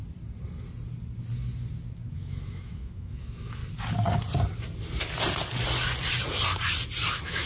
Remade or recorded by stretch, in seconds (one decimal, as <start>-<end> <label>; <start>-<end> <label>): 0.0-2.1 recorded; 2.1-3.6 remade; 3.6-7.1 recorded; 7.1-7.5 remade